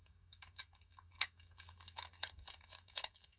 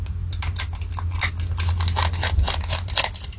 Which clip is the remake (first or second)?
first